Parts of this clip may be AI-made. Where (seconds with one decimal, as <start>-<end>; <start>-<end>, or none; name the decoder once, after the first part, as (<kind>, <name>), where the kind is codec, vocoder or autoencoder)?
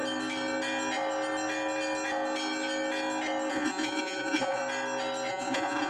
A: 3.5-4.6 (vocoder, Vocos); 5.3-5.9